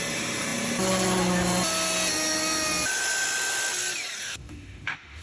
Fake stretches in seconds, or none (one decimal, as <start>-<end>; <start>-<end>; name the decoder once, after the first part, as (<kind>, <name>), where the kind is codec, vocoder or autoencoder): 4.2-5.2 (autoencoder, DAC-VAE)